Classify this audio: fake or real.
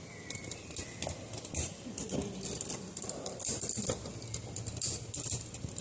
real